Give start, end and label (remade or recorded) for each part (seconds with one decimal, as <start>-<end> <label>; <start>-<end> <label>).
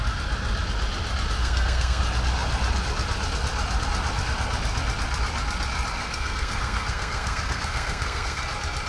0.0-1.4 recorded; 1.4-2.0 remade; 2.0-6.0 recorded; 6.0-8.4 remade; 8.4-8.9 recorded